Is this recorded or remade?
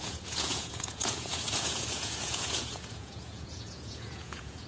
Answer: remade